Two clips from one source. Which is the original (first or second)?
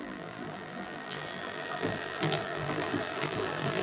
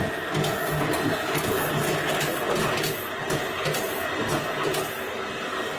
second